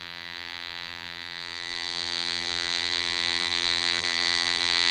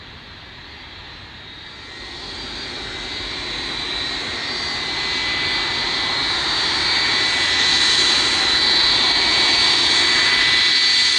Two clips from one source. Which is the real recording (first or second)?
second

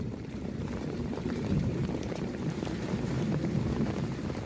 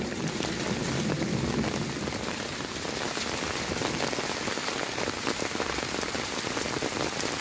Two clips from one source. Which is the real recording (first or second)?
second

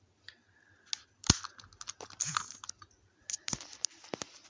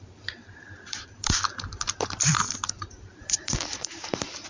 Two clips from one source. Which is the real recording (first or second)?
first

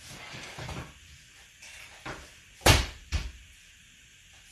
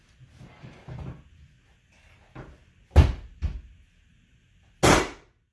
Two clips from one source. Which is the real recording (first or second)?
second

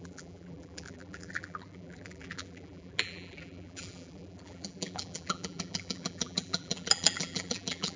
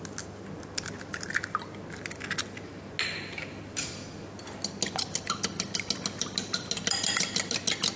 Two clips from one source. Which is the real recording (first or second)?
second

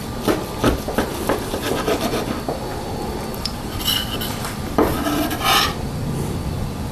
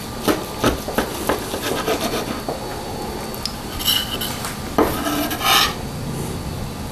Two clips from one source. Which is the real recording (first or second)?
second